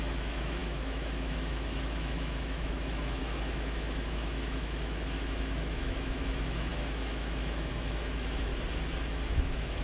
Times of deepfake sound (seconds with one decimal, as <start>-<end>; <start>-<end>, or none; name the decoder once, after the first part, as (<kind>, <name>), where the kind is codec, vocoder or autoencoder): 0.0-8.5 (autoencoder, DAC-VAE); 9.3-9.8